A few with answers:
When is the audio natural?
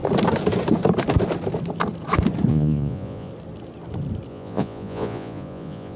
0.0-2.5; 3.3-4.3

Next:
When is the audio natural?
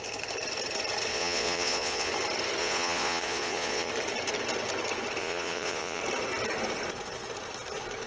0.0-1.1; 2.1-2.6; 3.9-5.2; 6.0-8.1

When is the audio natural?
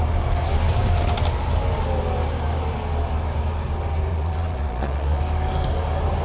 0.0-4.1; 5.2-6.2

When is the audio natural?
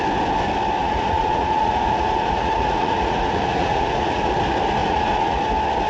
0.0-0.8; 4.3-4.8; 5.4-5.9